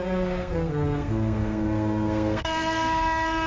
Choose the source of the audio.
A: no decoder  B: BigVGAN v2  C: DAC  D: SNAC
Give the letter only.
D